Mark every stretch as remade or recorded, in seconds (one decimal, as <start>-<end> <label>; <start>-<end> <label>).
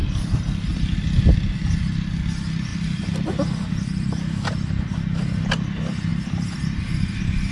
0.0-0.7 recorded; 0.7-1.3 remade; 1.3-2.7 recorded; 2.7-3.7 remade; 3.7-6.1 recorded; 6.1-7.5 remade